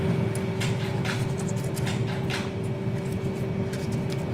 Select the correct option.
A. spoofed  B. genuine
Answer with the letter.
B